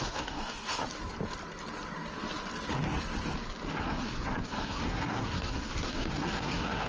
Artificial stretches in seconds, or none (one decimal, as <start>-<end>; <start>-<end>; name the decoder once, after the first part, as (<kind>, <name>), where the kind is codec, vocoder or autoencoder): 0.0-0.8 (codec, SNAC); 3.8-6.9